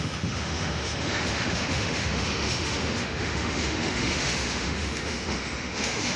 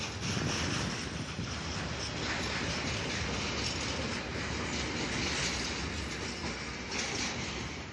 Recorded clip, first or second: second